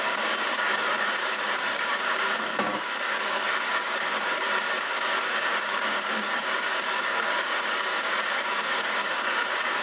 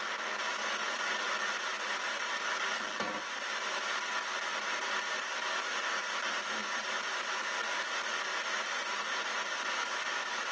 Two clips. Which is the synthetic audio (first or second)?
first